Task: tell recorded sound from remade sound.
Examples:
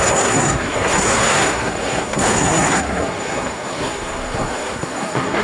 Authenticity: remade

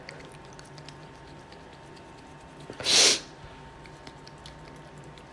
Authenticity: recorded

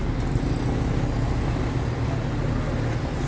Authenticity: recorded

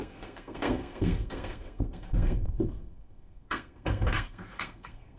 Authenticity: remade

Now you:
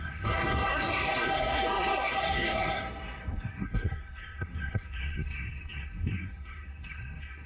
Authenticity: remade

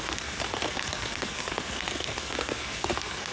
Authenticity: remade